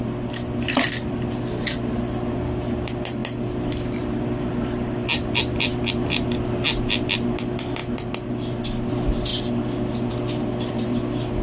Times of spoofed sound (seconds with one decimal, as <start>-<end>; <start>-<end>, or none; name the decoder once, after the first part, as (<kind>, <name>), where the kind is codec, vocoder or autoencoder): none